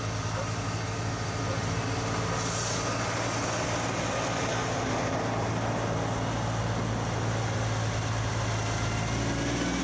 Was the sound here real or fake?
real